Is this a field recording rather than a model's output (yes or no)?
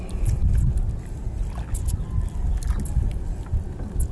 yes